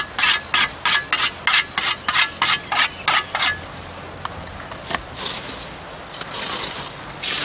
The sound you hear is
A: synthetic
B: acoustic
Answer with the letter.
B